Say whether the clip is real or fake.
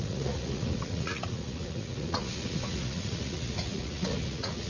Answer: fake